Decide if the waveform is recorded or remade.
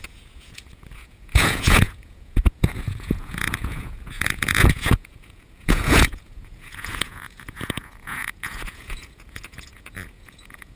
remade